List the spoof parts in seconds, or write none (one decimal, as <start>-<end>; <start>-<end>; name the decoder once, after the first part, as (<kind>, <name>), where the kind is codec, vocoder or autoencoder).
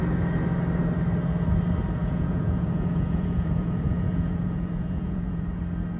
2.0-5.6 (vocoder, Vocos)